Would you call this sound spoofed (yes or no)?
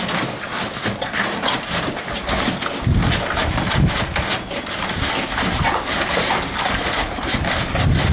no